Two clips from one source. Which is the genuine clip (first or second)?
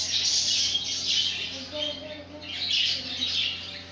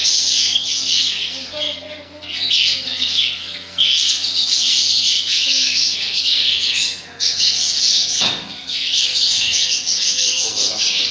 first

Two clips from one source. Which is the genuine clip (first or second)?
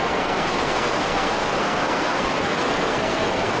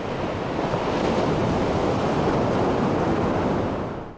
second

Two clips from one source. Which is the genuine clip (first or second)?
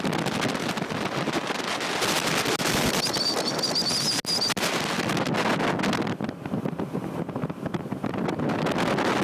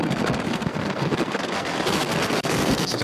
first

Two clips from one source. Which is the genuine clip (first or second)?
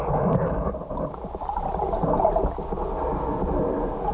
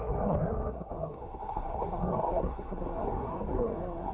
first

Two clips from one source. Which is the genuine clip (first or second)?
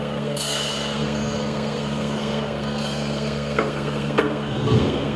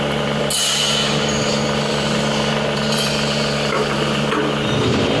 second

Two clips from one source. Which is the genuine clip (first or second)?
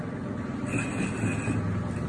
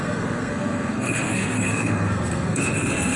first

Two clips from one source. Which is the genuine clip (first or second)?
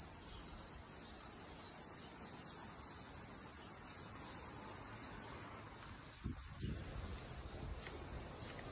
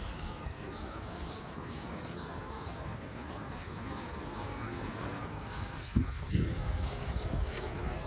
first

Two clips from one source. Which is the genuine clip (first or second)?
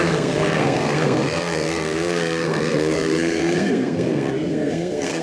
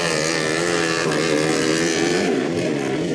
second